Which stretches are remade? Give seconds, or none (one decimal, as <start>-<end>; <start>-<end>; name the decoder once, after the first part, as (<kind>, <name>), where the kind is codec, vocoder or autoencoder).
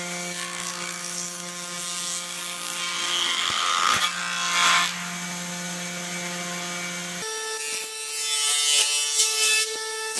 0.0-4.2 (codec, DAC); 9.2-10.2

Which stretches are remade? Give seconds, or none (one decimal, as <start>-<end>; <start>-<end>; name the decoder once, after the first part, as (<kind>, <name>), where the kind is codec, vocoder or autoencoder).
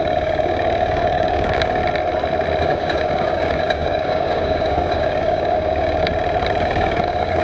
0.0-1.8 (codec, DAC); 2.6-6.1; 6.6-7.4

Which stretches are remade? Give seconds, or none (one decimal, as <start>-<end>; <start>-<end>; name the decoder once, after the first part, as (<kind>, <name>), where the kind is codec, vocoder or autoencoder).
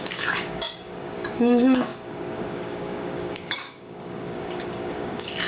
0.0-5.5 (codec, DAC)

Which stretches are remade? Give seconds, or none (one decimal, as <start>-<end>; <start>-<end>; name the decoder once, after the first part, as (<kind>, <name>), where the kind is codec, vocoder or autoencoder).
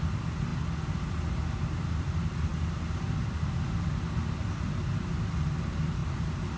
none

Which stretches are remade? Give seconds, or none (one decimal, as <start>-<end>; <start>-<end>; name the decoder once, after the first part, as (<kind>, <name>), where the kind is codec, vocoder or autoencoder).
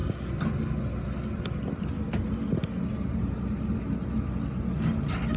none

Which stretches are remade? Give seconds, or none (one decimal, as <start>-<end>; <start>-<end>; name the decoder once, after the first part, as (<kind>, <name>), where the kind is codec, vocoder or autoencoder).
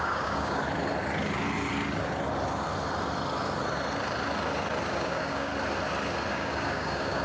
0.0-0.6 (codec, DAC); 4.9-5.5; 6.3-7.2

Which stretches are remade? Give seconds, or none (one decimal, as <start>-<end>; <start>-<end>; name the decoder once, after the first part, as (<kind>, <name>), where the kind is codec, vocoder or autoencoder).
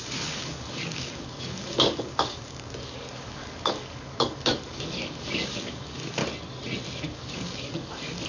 0.0-6.2 (codec, DAC); 7.0-8.3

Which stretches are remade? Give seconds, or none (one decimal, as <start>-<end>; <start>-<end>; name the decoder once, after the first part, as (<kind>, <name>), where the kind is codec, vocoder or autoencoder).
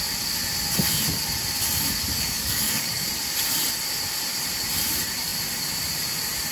2.1-3.1 (codec, DAC)